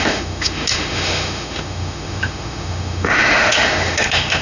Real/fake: fake